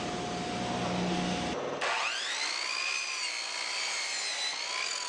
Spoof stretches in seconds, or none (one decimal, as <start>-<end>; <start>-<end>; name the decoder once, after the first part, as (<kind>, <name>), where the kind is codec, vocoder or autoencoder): none